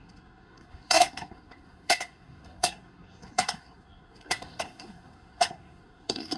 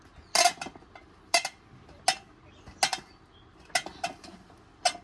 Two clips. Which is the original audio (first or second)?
second